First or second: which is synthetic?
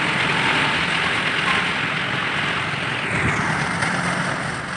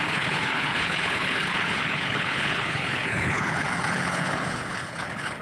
second